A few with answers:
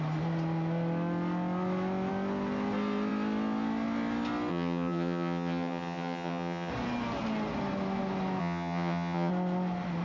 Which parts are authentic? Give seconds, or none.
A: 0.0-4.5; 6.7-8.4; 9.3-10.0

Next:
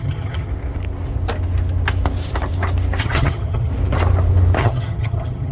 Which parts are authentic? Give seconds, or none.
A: 0.5-3.0; 3.7-4.6

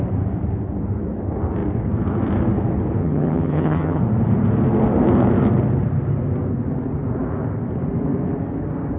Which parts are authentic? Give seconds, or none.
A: 0.0-3.0; 4.0-9.0

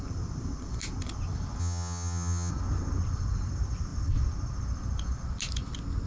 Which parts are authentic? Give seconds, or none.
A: 0.0-1.6; 2.5-6.1

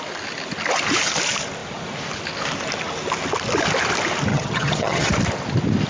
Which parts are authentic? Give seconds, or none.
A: 0.0-4.3; 5.1-5.9

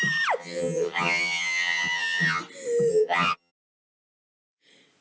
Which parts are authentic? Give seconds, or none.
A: 0.0-0.4; 2.4-2.9; 3.5-5.0